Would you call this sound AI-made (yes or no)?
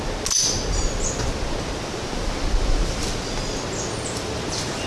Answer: no